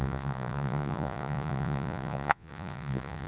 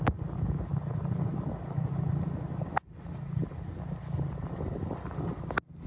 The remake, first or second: first